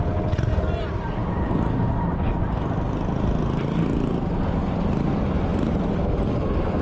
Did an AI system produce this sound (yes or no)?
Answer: no